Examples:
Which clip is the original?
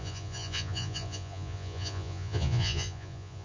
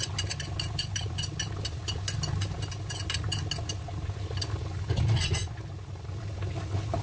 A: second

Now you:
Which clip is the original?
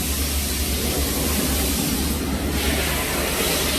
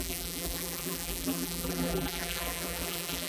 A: first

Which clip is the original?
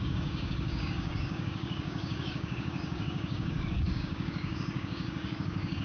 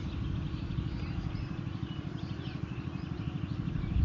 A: second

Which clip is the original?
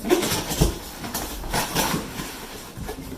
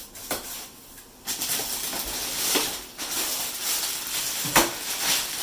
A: second